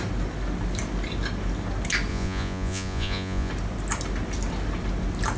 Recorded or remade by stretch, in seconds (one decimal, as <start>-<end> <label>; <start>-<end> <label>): 0.0-2.1 recorded; 2.1-3.5 remade; 3.5-5.4 recorded